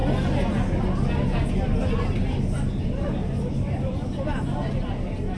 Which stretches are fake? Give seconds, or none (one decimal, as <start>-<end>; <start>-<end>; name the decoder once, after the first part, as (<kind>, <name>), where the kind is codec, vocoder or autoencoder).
none